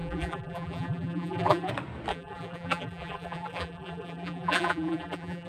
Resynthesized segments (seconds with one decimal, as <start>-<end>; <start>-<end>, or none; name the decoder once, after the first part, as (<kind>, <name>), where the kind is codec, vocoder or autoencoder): 0.0-1.7 (vocoder, BigVGAN v2); 2.1-5.5